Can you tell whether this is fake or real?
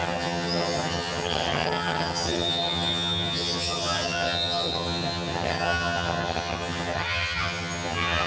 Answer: fake